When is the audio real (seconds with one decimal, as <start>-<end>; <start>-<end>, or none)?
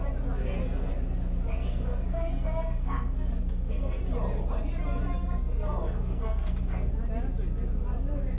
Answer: 0.0-0.4; 0.9-1.5; 4.0-5.2; 6.9-8.4